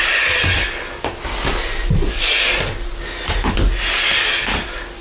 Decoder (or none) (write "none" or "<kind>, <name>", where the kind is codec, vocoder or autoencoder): none